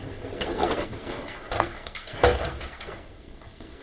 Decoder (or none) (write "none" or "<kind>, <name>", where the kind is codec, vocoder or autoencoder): codec, SNAC